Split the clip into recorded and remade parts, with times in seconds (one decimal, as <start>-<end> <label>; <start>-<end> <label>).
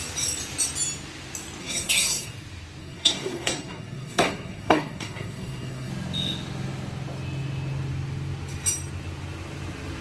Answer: 0.0-1.6 recorded; 1.6-2.3 remade; 2.3-2.8 recorded; 2.8-5.9 remade; 5.9-10.0 recorded